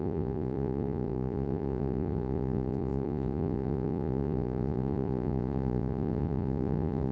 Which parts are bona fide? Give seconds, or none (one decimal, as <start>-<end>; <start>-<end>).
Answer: none

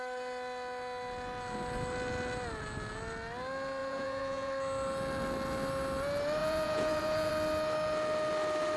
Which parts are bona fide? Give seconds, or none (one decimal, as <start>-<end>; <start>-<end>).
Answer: 0.0-3.8; 4.5-6.4; 7.3-8.8

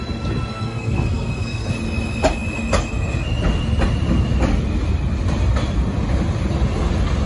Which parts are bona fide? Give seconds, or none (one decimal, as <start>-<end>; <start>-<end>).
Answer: 0.0-0.5; 1.7-7.3